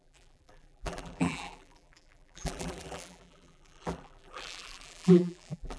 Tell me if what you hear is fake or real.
fake